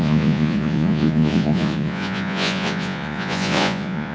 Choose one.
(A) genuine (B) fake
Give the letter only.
B